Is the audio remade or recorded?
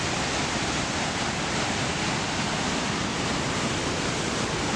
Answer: recorded